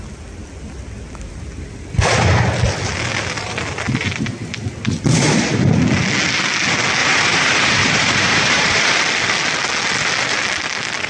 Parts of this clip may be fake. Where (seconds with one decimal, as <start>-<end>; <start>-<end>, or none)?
7.0-9.0